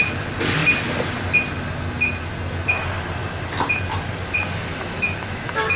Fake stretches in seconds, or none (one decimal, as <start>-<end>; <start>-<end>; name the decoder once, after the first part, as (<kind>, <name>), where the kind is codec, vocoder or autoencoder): 4.7-5.8 (autoencoder, DAC-VAE)